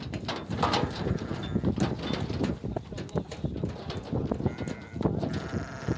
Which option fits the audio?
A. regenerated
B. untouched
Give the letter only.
B